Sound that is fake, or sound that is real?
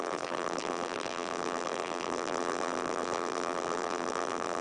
fake